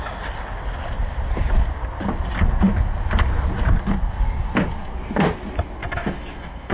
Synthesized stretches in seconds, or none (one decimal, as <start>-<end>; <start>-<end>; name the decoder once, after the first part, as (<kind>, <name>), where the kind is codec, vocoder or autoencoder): 5.8-6.7 (autoencoder, DAC-VAE)